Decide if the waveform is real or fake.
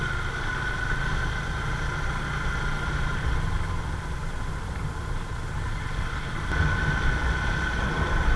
real